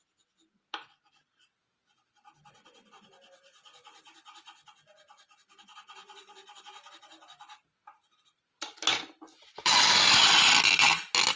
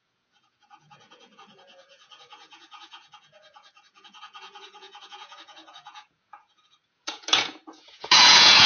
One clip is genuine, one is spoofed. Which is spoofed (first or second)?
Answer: second